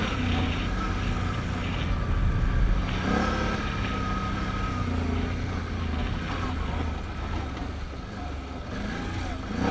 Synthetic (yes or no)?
no